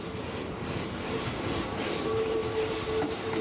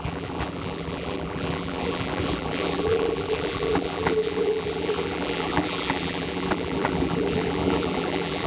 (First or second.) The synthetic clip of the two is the second